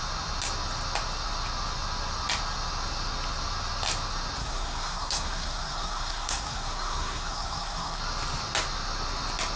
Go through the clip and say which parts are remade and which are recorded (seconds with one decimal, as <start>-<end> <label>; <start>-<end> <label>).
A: 0.0-4.4 recorded; 4.4-8.0 remade; 8.0-9.6 recorded